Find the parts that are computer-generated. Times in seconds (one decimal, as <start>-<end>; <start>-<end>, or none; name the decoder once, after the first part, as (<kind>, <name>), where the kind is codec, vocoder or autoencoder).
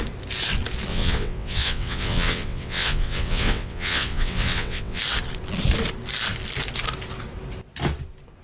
0.9-5.0 (vocoder, WaveNeXt)